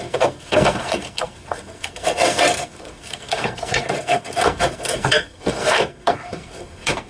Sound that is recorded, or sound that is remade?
remade